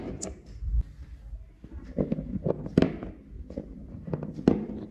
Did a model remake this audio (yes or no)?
no